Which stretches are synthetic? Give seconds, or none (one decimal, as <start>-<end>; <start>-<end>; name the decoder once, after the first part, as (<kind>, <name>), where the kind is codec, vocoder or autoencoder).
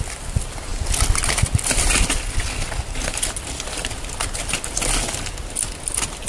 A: none